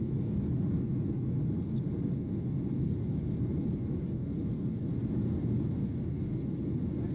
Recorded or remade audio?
recorded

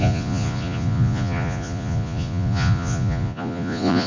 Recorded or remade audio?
remade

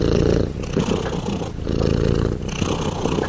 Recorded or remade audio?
recorded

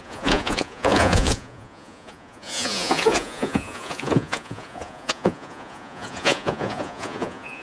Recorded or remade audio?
remade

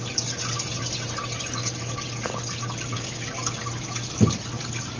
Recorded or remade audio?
recorded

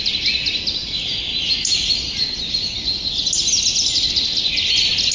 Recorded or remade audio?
recorded